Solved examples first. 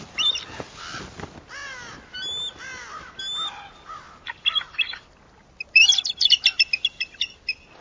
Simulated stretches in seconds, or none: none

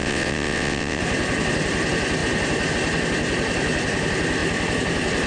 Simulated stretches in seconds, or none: 0.0-1.0 (vocoder, WaveNeXt)

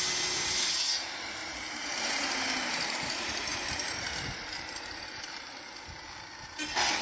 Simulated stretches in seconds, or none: 1.4-5.5 (vocoder, BigVGAN v2)